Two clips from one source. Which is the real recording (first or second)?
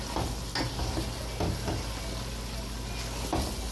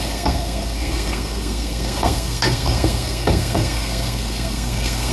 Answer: first